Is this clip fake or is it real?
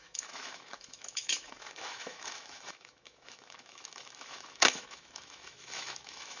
fake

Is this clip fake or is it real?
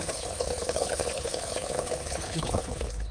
fake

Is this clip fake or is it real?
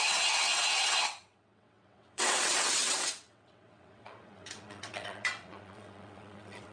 fake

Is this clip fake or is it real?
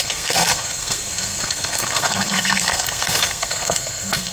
fake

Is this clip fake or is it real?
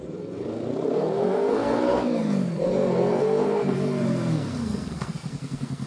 fake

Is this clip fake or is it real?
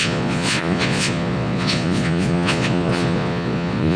fake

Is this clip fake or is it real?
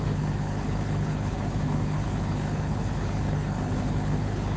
fake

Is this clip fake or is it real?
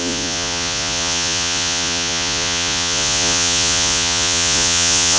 fake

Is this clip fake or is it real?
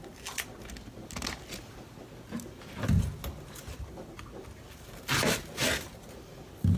real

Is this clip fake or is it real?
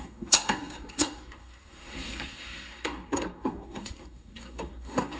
fake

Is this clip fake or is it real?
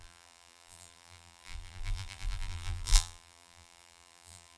fake